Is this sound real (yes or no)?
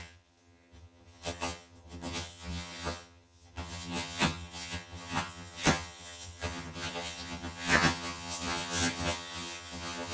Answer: no